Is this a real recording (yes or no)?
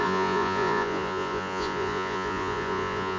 no